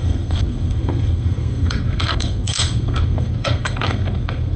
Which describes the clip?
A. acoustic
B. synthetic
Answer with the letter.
B